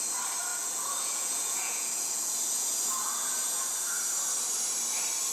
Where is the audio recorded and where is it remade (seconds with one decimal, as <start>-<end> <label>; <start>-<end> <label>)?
0.0-0.5 recorded; 0.5-3.7 remade; 3.7-5.3 recorded